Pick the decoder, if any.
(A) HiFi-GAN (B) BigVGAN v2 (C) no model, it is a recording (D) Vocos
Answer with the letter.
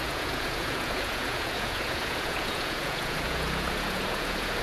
D